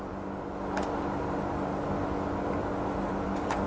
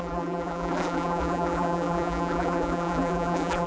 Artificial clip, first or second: second